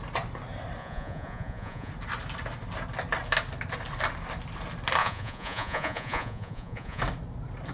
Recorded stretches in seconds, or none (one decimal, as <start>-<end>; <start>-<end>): 0.0-0.8; 1.9-5.0; 7.0-7.7

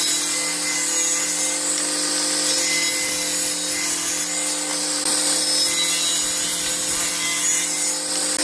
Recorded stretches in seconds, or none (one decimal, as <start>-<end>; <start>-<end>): 0.0-4.7; 5.4-8.4